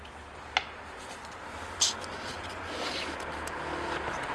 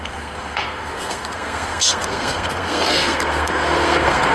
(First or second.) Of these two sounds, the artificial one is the second